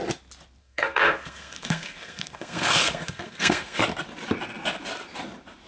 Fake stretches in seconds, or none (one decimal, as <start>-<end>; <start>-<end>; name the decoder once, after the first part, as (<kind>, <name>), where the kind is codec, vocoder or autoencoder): 0.6-3.8 (codec, SNAC)